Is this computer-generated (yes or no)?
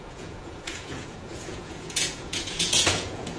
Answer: yes